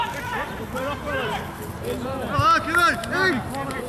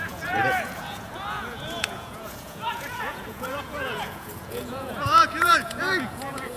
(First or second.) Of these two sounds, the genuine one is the first